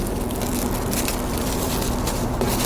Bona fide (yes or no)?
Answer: yes